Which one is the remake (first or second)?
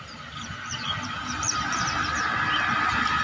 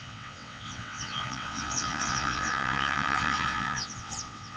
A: second